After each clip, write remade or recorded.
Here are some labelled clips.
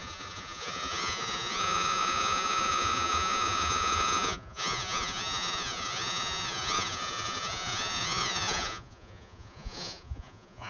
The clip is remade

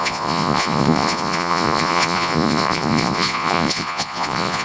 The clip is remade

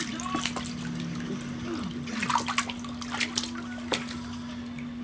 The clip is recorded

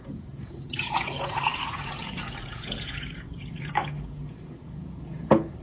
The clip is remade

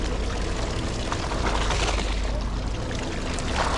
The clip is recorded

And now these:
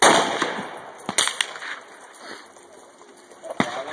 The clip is recorded